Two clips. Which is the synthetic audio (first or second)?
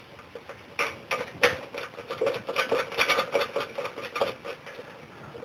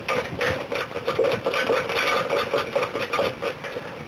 second